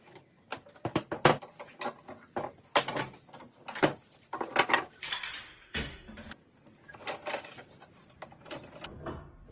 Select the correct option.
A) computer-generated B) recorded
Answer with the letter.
B